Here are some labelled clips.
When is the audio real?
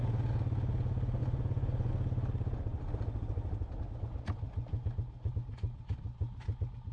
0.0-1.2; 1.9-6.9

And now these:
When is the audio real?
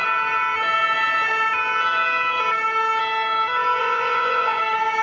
0.0-3.8; 4.6-5.0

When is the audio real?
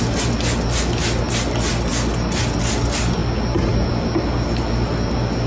0.0-5.5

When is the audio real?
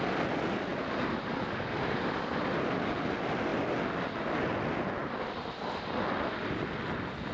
0.0-7.3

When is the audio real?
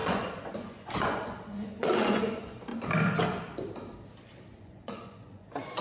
2.7-4.6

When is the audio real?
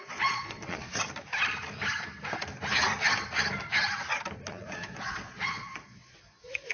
0.9-4.5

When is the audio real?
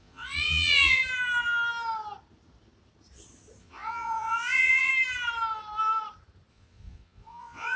1.0-3.6; 4.9-6.5